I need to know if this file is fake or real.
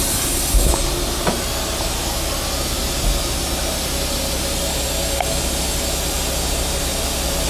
real